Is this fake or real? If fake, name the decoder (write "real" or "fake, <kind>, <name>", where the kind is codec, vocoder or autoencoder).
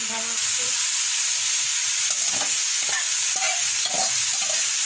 real